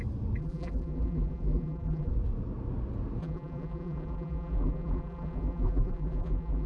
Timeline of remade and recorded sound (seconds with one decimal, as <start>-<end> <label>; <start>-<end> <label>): 0.0-0.4 recorded; 0.4-2.1 remade; 2.1-3.2 recorded; 3.2-6.7 remade